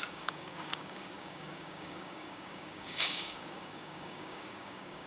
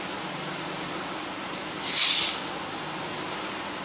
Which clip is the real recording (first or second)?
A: second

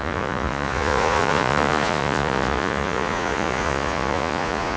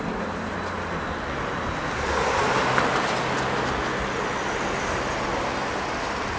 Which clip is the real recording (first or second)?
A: second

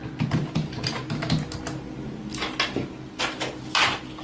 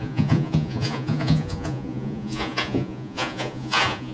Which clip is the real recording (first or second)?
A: first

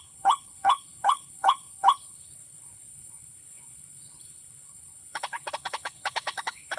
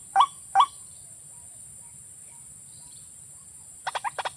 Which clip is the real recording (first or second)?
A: second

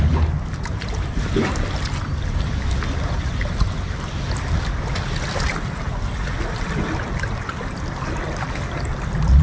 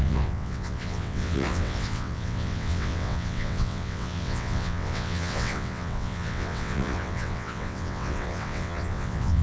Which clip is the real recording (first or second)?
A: first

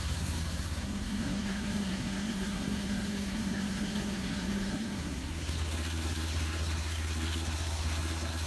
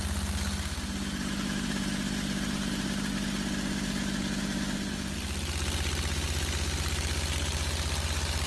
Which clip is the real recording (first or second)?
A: second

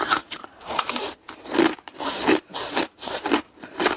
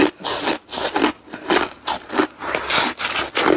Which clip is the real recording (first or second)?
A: second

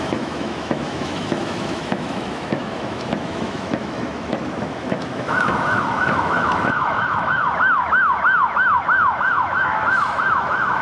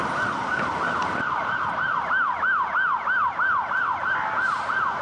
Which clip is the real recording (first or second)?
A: second